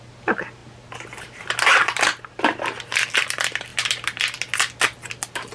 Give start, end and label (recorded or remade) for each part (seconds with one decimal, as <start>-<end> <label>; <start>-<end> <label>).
0.0-5.5 recorded